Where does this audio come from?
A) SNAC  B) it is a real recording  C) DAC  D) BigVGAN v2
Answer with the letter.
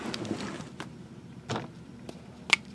B